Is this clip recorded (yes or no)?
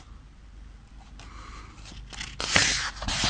yes